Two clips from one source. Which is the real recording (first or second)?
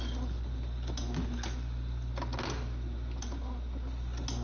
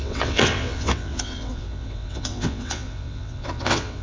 first